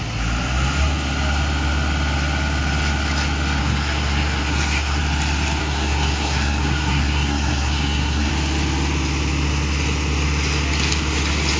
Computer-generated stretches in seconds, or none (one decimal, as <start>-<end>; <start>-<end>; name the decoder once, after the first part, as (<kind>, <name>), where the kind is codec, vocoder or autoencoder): 3.6-5.0 (codec, SNAC); 5.6-8.3